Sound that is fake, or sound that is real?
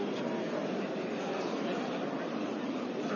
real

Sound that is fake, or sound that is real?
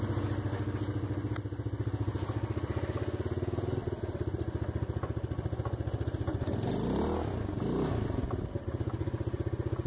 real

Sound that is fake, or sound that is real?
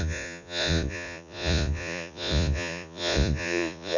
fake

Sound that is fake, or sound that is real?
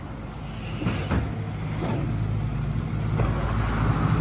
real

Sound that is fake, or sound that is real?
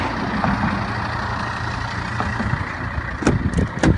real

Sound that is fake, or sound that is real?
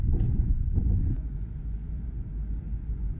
fake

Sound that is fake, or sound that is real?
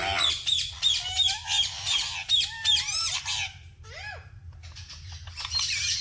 real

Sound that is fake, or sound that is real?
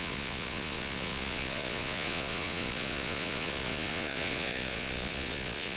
fake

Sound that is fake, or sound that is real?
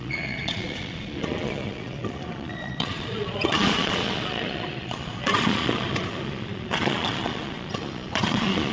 fake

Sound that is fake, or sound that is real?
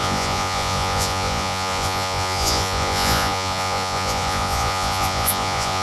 fake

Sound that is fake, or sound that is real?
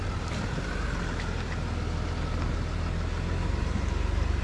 real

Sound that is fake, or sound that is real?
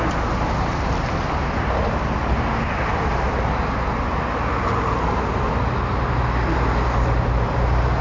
real